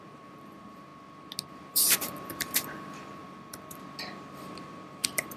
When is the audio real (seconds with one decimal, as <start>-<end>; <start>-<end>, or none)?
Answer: 0.9-1.7; 3.2-4.1